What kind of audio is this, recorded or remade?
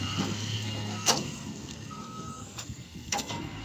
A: remade